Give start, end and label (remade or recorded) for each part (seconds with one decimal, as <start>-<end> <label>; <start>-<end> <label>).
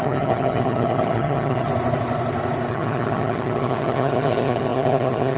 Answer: 0.0-1.7 remade; 1.7-2.7 recorded; 2.7-5.4 remade